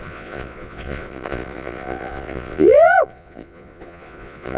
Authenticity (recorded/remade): remade